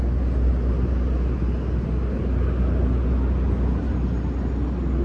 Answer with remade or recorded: recorded